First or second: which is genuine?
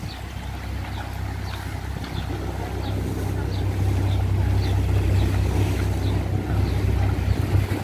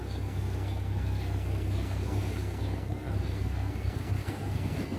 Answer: first